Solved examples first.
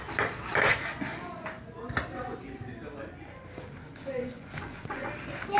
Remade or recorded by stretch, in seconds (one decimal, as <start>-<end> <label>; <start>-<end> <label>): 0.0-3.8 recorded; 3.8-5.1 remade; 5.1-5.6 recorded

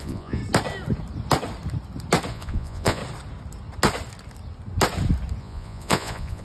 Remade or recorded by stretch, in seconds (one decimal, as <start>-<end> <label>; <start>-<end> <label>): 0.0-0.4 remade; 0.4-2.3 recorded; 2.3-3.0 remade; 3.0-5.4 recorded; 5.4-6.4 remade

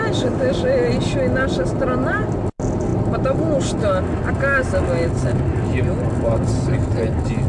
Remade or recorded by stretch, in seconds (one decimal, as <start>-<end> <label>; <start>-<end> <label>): 0.0-7.5 recorded

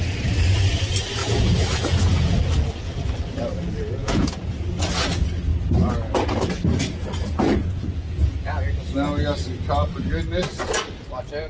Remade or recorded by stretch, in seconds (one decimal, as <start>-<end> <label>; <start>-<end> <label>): 0.0-1.2 recorded; 1.2-2.4 remade; 2.4-4.0 recorded; 4.0-4.7 remade; 4.7-7.2 recorded; 7.2-8.6 remade; 8.6-11.5 recorded

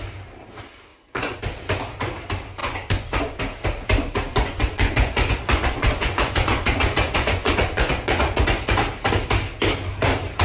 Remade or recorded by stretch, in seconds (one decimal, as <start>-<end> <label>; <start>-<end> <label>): 0.0-0.9 recorded; 0.9-1.4 remade; 1.4-2.6 recorded; 2.6-3.4 remade; 3.4-4.3 recorded; 4.3-8.7 remade; 8.7-10.4 recorded